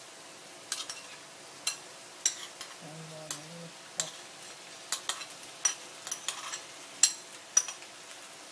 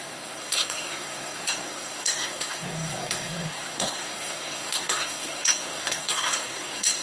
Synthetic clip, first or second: second